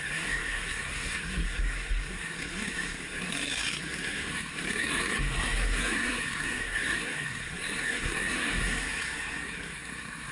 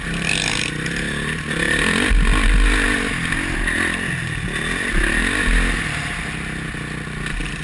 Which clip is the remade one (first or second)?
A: first